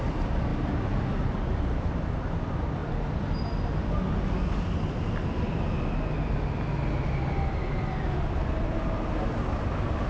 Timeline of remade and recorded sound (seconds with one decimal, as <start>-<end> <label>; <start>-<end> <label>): 0.0-10.1 recorded